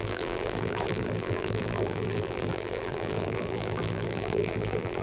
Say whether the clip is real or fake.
fake